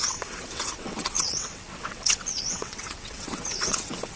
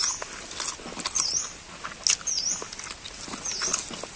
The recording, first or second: second